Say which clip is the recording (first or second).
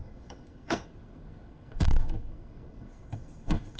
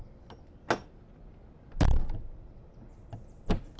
second